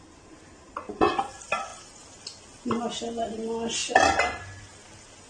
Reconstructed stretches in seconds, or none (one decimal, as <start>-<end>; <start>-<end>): 3.8-4.8